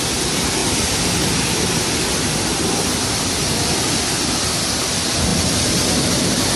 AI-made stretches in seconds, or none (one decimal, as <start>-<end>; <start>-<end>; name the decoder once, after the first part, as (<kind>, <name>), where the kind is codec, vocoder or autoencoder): none